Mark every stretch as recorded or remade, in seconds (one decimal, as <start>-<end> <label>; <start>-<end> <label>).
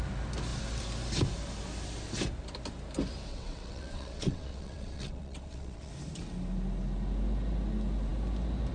0.0-3.3 recorded; 3.3-5.9 remade; 5.9-8.7 recorded